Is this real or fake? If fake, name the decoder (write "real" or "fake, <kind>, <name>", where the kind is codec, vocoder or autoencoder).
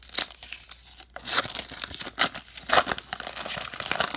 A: real